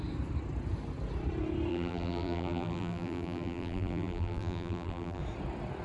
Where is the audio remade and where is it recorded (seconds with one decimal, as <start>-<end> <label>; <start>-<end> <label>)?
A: 0.0-1.7 recorded; 1.7-5.2 remade; 5.2-5.8 recorded